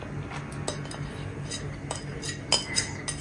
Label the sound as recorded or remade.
recorded